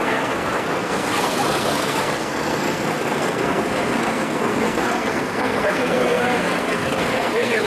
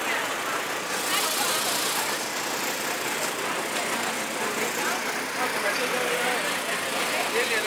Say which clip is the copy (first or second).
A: first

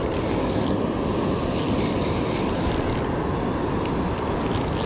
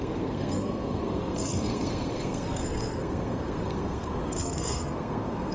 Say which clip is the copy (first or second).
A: second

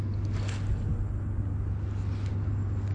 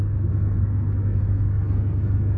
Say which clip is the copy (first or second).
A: second